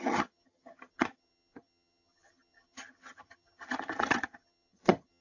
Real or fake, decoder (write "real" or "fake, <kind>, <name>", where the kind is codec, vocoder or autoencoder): fake, vocoder, HiFi-GAN